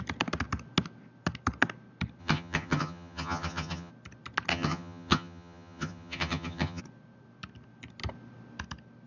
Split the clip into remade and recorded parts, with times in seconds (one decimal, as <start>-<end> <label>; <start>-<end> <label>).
0.0-2.2 recorded; 2.2-3.9 remade; 3.9-4.5 recorded; 4.5-6.8 remade; 6.8-9.1 recorded